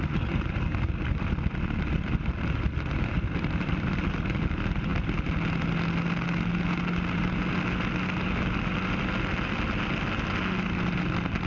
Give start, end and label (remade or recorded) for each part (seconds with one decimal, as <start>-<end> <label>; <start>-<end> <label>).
0.0-11.5 recorded